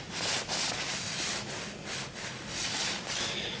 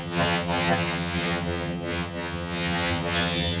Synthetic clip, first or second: second